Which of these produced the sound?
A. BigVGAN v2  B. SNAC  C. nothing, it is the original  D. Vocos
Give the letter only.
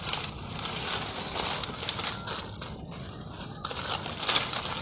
C